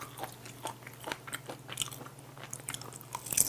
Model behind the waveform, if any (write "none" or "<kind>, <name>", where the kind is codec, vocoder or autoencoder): none